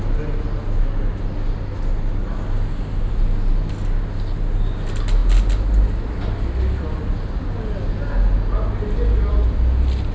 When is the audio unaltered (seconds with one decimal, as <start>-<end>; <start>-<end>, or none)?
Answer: 0.0-10.1